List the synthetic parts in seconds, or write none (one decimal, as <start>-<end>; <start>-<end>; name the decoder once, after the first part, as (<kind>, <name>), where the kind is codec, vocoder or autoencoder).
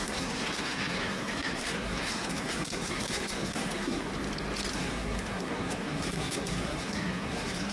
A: 0.0-4.1 (codec, SNAC); 4.7-7.7